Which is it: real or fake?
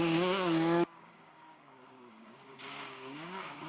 fake